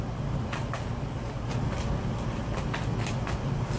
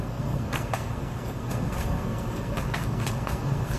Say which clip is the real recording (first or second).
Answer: first